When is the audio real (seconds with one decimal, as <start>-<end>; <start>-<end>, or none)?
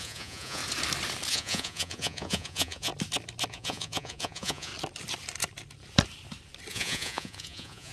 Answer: 0.6-1.3; 2.9-3.5; 4.7-6.7